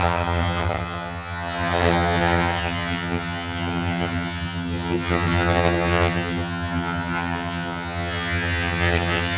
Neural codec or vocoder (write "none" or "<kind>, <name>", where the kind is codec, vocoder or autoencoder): vocoder, HiFi-GAN